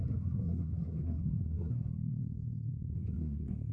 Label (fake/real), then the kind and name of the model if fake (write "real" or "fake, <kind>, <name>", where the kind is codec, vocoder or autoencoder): fake, codec, SNAC